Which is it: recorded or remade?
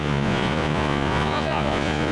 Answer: remade